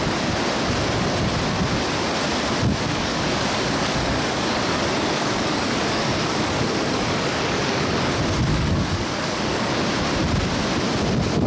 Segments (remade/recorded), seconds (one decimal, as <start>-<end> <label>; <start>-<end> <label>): 0.0-2.9 recorded; 2.9-8.1 remade; 8.1-8.5 recorded; 8.5-9.7 remade; 9.7-11.5 recorded